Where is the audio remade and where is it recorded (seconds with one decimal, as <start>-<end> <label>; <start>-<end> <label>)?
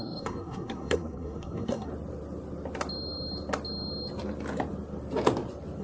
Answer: 0.0-1.9 remade; 1.9-5.8 recorded